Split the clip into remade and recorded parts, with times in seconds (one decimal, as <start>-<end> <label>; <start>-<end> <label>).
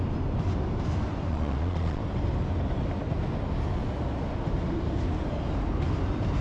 0.0-1.3 recorded; 1.3-2.0 remade; 2.0-6.4 recorded